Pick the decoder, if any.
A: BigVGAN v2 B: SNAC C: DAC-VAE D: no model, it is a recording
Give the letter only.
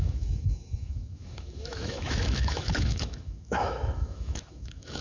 C